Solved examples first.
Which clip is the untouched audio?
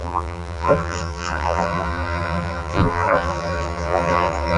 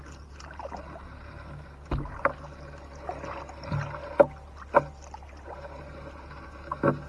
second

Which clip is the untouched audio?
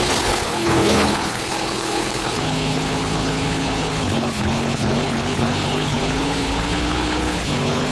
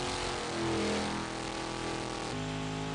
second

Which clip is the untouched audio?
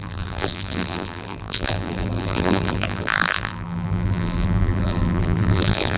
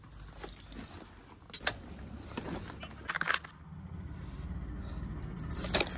second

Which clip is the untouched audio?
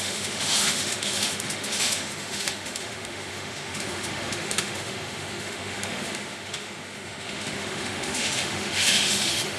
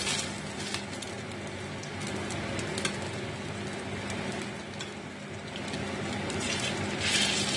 second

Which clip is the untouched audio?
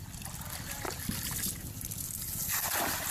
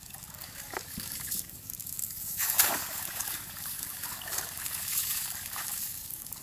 first